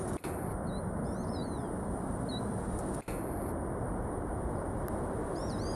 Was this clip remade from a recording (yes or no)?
no